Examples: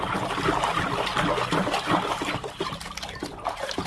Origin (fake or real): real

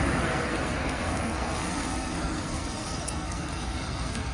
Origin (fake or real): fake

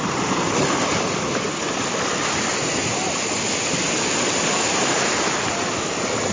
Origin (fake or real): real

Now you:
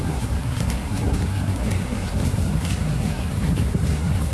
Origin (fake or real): fake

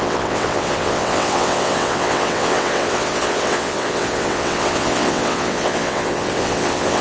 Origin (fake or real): fake